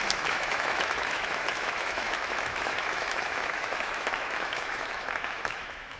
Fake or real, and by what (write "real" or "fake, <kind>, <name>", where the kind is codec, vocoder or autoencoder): fake, autoencoder, DAC-VAE